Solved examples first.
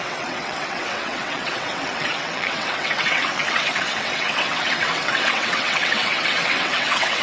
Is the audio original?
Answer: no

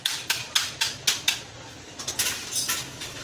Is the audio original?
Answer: yes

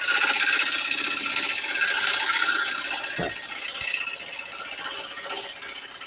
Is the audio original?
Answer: yes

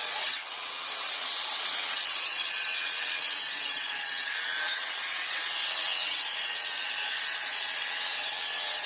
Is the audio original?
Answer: no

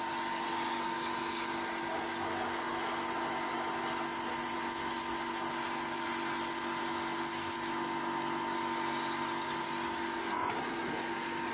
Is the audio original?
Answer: yes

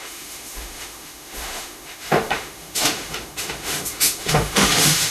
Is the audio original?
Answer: no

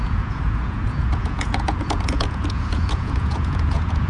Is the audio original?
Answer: no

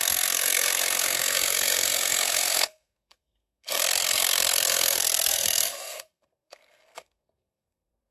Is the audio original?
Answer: no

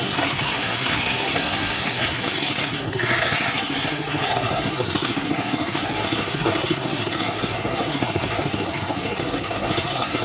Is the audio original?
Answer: no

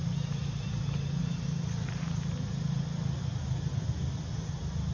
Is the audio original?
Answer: yes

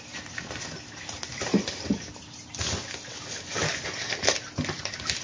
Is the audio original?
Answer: yes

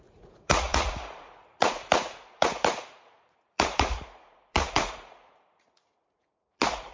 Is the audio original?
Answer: no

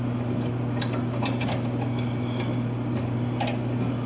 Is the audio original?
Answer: yes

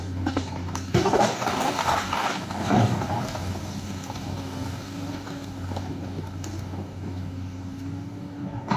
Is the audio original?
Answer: no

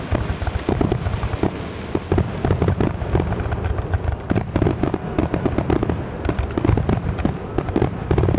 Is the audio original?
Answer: yes